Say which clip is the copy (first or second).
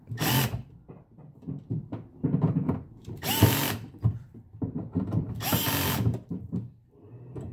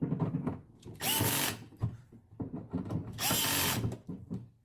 first